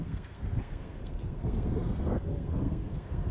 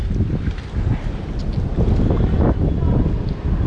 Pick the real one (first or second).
second